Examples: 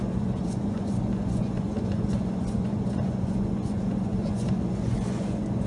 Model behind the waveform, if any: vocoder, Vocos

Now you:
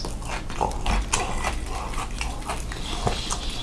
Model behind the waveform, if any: none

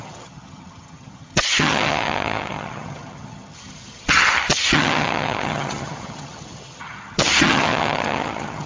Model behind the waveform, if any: vocoder, HiFi-GAN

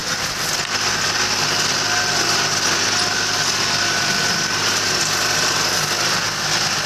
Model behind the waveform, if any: none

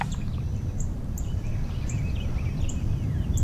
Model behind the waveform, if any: vocoder, BigVGAN v2